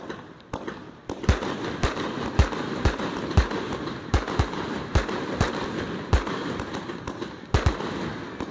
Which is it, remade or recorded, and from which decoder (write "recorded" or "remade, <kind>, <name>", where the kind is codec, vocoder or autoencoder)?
recorded